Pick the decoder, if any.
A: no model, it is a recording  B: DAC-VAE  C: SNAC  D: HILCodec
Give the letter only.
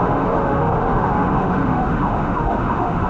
B